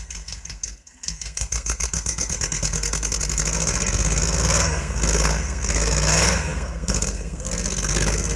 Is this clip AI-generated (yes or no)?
yes